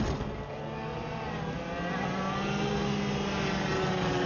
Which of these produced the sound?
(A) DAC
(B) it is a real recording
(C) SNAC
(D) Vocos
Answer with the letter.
B